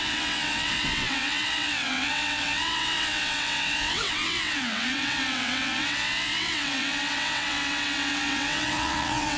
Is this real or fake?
fake